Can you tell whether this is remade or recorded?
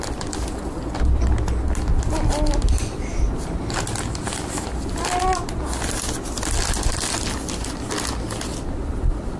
recorded